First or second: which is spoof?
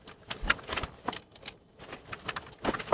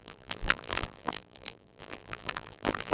second